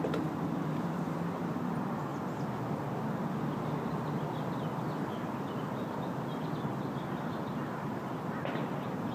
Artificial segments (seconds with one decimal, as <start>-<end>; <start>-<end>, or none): 0.0-2.1; 6.7-9.1